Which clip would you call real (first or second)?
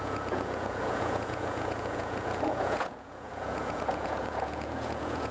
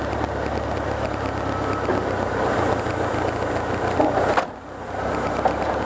second